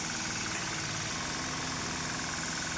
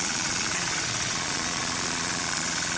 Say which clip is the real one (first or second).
first